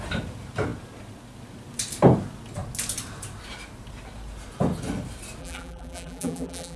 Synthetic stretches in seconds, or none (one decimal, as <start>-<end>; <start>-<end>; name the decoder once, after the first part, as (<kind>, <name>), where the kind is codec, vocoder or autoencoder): 5.4-6.8 (vocoder, BigVGAN v2)